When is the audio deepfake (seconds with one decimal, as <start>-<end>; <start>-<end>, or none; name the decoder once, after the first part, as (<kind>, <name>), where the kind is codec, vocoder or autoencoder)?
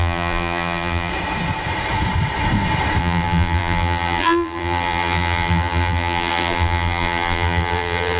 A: 0.0-1.1 (vocoder, BigVGAN v2); 3.0-8.2